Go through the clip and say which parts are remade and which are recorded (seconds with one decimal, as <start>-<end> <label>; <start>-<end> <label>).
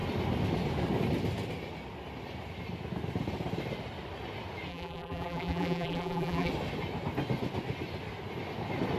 0.0-4.7 recorded; 4.7-6.5 remade; 6.5-9.0 recorded